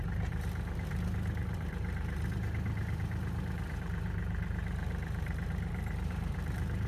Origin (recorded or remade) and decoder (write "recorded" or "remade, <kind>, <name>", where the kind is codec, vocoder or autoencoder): remade, vocoder, BigVGAN v2